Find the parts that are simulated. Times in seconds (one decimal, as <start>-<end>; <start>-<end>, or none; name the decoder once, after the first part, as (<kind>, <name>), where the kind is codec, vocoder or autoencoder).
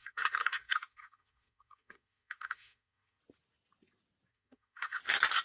0.0-3.2 (codec, SNAC); 4.3-5.0